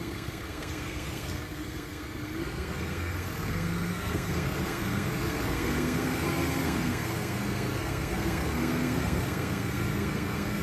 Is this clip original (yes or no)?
no